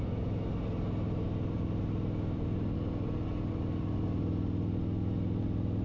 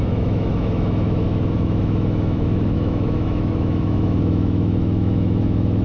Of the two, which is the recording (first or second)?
first